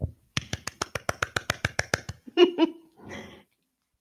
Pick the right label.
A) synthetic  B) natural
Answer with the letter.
A